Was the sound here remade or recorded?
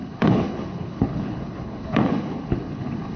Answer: remade